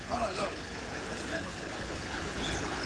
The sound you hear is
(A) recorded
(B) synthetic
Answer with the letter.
B